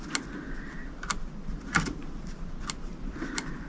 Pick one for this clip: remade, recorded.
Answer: recorded